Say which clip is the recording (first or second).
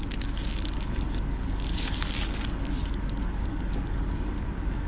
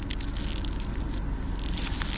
second